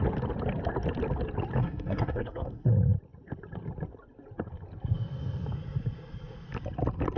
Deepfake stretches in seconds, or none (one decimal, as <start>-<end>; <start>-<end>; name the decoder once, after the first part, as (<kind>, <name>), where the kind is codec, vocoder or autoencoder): 1.6-2.7 (codec, SNAC)

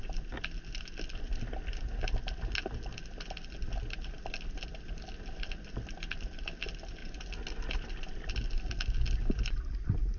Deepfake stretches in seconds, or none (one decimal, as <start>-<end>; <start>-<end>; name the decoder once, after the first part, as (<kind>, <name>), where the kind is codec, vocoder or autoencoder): none

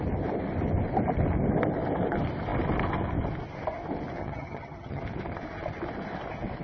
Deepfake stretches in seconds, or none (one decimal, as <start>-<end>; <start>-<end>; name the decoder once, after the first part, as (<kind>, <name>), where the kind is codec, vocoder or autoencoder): 4.2-5.0 (vocoder, HiFi-GAN)

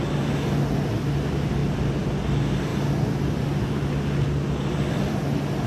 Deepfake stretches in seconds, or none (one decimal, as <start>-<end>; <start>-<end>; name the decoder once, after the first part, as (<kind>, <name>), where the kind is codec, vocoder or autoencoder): 1.6-2.1 (vocoder, BigVGAN v2)

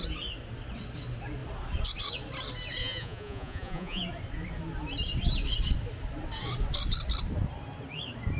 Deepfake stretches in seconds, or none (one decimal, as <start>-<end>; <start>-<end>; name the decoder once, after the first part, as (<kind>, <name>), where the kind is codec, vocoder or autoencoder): 2.8-4.0 (vocoder, Vocos)

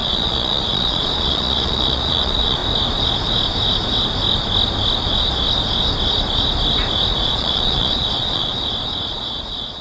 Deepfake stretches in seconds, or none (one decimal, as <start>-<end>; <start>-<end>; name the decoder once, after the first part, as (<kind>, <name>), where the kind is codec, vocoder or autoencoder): 0.0-2.6 (vocoder, Vocos); 7.1-8.5; 9.1-9.8

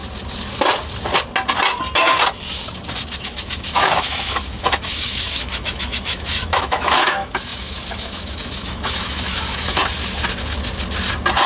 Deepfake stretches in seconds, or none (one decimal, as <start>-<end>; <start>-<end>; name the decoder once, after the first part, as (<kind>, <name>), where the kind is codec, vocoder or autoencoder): 3.2-9.8 (autoencoder, DAC-VAE)

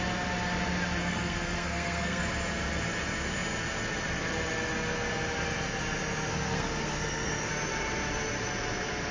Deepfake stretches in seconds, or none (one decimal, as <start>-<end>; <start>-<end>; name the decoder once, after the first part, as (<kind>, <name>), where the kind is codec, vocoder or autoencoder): 1.0-2.2 (codec, SNAC); 6.3-7.5